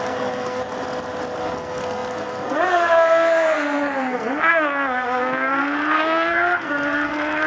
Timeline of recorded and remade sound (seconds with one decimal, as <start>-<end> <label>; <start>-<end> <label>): 0.0-0.6 remade; 0.6-1.4 recorded; 1.4-7.5 remade